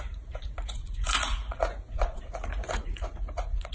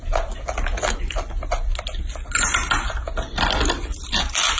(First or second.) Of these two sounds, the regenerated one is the first